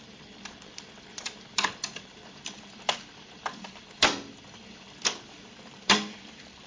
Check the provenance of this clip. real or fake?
fake